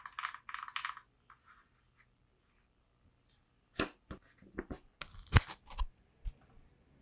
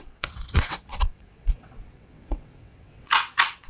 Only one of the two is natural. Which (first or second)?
first